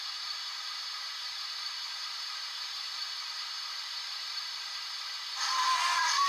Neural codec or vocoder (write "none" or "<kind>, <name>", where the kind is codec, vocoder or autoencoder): vocoder, BigVGAN v2